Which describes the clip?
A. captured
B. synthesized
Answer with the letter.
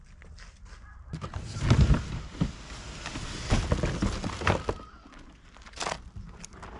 A